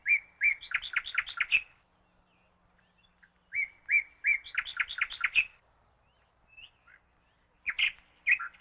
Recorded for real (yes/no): yes